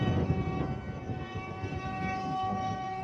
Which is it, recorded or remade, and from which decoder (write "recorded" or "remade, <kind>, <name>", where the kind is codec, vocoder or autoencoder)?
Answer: remade, codec, SNAC